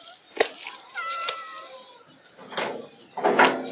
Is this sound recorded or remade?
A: recorded